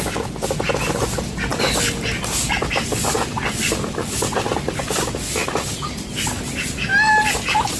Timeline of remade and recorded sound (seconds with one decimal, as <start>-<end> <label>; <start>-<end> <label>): 0.0-7.8 recorded